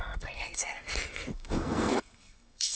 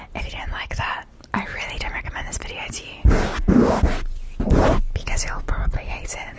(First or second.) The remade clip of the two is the first